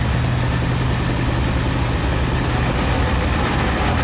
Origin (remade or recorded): recorded